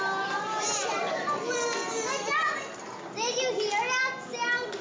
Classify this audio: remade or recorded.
recorded